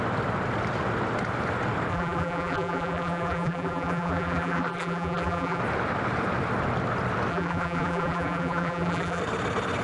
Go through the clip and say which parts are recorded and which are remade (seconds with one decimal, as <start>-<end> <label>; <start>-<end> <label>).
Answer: 0.0-1.9 recorded; 1.9-5.6 remade; 5.6-7.3 recorded; 7.3-9.2 remade; 9.2-9.8 recorded